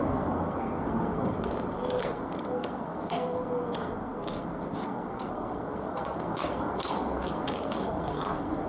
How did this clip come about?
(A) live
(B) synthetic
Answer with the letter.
B